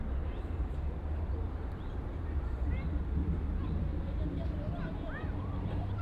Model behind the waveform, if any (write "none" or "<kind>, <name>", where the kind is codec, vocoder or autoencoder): vocoder, BigVGAN v2